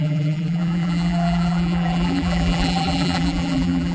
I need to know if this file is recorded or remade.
remade